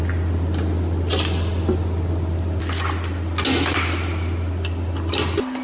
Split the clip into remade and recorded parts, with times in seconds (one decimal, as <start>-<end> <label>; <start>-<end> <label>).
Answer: 0.0-5.6 recorded